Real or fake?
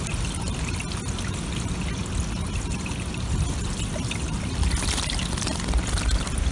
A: real